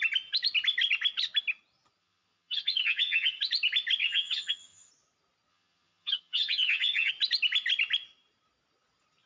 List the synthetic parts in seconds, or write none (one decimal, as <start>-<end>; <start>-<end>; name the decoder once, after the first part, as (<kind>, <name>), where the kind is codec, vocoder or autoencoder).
2.0-3.4 (vocoder, HiFi-GAN); 4.0-4.9; 5.5-7.1